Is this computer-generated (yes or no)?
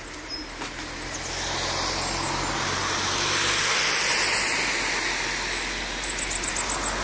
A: no